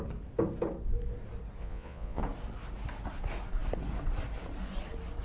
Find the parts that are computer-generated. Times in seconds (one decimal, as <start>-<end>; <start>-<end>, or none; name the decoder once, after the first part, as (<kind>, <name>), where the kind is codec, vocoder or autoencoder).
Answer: 1.6-2.2 (vocoder, Vocos)

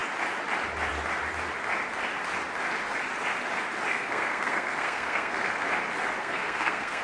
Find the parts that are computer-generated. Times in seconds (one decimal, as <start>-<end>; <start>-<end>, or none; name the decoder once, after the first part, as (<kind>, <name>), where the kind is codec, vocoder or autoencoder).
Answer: 3.9-5.6 (codec, SNAC); 6.2-7.0

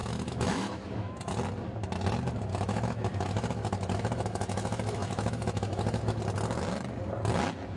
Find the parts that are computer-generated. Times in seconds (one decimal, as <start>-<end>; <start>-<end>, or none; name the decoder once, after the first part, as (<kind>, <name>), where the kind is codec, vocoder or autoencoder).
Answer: 0.0-1.3 (autoencoder, DAC-VAE); 2.5-6.2

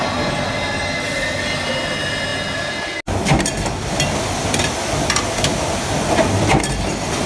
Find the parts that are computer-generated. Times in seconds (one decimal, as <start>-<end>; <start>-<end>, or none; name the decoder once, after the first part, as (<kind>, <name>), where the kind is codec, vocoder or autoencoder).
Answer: none